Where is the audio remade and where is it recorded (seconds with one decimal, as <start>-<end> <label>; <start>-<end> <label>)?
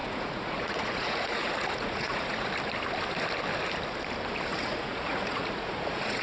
0.0-2.5 remade; 2.5-4.5 recorded; 4.5-6.2 remade